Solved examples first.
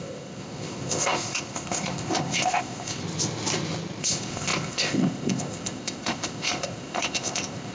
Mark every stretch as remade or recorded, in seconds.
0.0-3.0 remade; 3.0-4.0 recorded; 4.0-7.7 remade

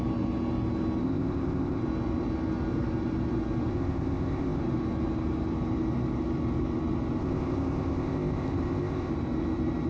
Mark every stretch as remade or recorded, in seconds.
0.0-1.0 recorded; 1.0-1.8 remade; 1.8-3.7 recorded; 3.7-4.6 remade; 4.6-7.2 recorded; 7.2-9.1 remade; 9.1-9.9 recorded

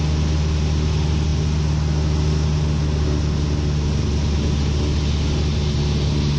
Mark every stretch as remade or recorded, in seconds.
0.0-6.4 recorded

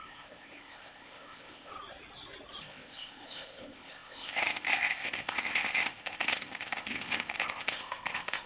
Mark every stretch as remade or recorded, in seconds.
0.0-1.7 remade; 1.7-2.6 recorded; 2.6-8.5 remade

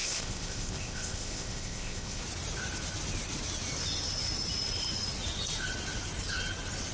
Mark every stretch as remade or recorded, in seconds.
0.0-2.2 remade; 2.2-6.9 recorded